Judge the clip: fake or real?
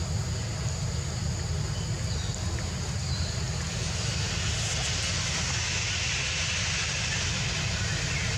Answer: real